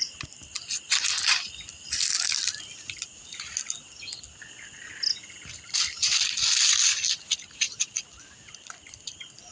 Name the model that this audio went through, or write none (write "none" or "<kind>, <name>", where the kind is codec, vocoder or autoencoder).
none